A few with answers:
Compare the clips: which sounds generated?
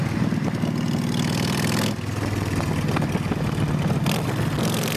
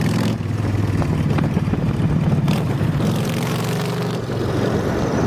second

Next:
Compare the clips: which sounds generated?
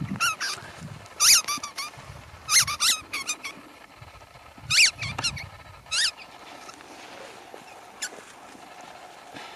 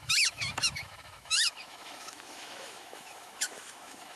second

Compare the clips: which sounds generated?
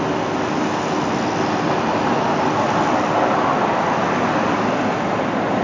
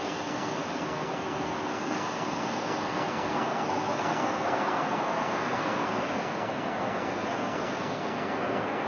second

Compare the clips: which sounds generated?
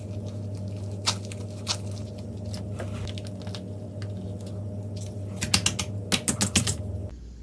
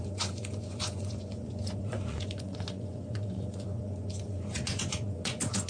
second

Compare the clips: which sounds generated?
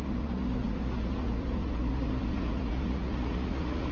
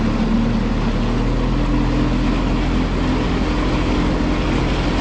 first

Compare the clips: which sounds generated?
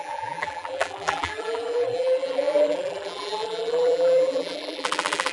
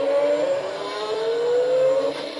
first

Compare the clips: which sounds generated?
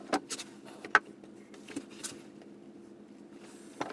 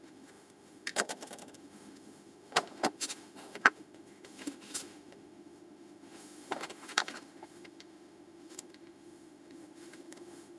second